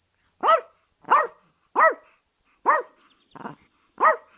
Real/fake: real